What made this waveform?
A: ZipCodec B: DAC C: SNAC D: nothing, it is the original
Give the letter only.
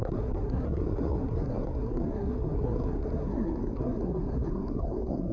C